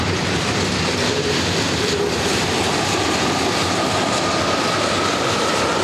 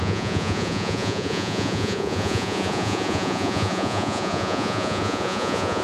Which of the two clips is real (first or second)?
first